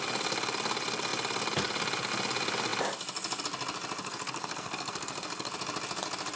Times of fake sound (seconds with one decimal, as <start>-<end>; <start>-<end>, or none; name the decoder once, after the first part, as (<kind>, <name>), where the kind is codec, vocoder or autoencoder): 4.0-5.5 (codec, SNAC)